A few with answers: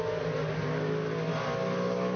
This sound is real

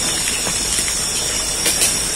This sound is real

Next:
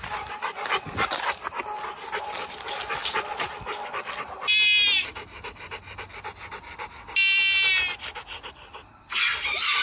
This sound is real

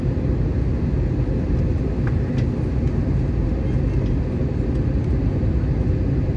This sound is real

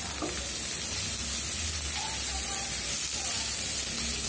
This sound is real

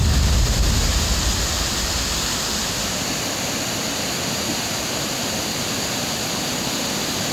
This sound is fake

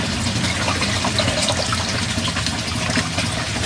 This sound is real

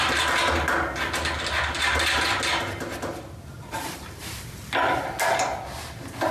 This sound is real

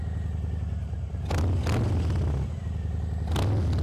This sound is real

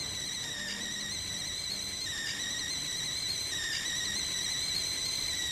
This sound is fake